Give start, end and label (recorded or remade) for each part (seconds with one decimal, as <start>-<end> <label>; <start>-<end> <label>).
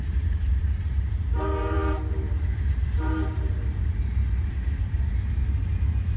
0.0-6.2 remade